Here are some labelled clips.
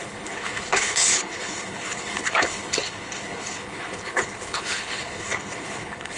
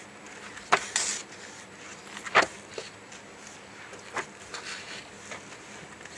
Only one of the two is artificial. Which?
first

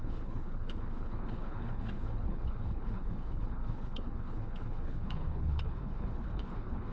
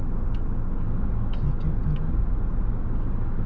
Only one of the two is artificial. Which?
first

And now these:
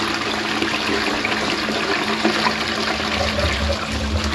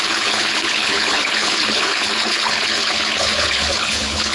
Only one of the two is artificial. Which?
second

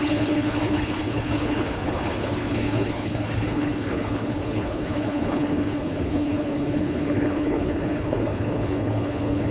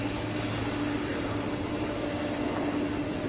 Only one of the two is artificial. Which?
first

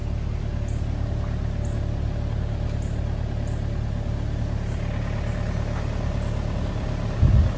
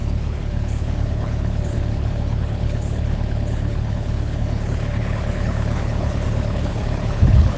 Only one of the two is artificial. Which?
second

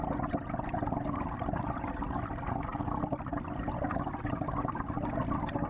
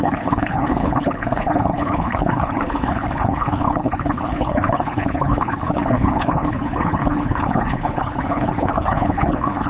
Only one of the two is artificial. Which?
second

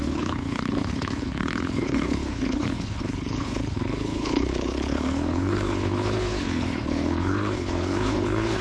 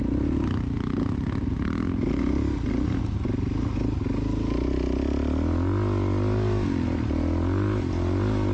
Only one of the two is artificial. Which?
first